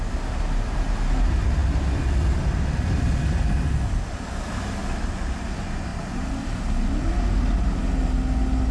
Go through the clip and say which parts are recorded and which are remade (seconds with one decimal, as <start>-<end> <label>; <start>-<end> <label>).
0.0-8.7 recorded